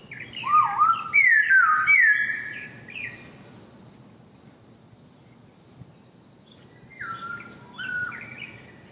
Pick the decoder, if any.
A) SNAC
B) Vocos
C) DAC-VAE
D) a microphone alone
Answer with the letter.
D